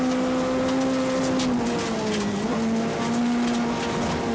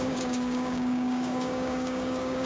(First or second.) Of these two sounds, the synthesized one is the second